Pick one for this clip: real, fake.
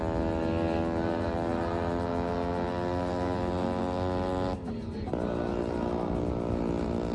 real